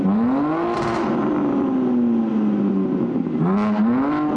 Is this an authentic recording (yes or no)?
yes